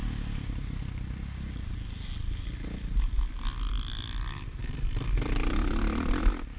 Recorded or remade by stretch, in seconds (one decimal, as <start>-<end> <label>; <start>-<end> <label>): 0.0-3.7 recorded; 3.7-6.6 remade

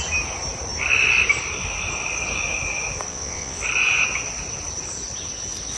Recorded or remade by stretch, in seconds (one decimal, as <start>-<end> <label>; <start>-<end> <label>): 0.0-3.1 recorded; 3.1-3.6 remade; 3.6-5.8 recorded